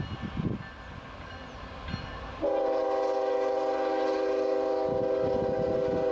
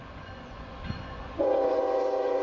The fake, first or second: second